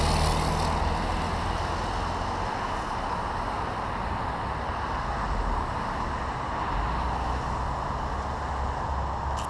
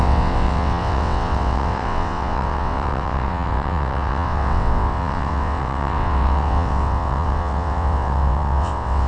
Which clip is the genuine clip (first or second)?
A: first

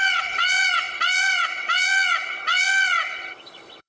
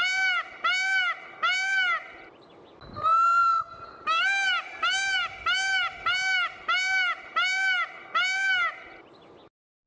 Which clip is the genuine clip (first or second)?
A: second